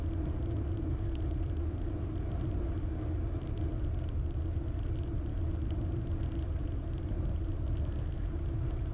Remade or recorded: recorded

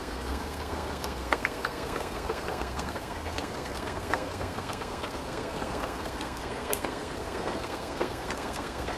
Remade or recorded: remade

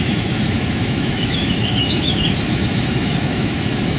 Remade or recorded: remade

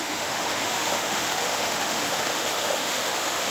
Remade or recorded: remade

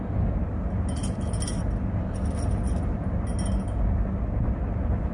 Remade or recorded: recorded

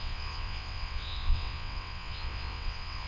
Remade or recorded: remade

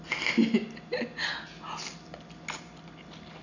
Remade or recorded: recorded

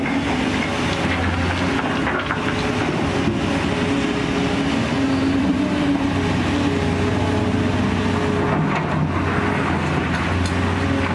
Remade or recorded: recorded